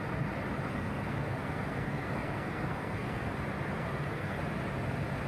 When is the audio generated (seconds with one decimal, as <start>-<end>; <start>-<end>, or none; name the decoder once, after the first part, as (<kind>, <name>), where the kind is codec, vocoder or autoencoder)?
0.7-3.3 (codec, SNAC); 3.7-4.4